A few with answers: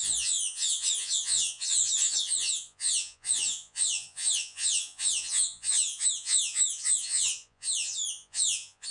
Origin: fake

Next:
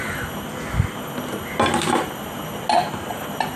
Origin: real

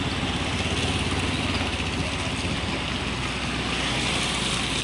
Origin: real